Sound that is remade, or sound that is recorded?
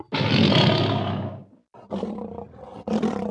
recorded